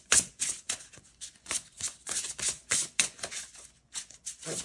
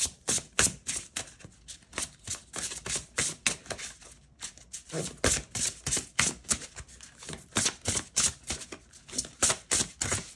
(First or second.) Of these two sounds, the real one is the second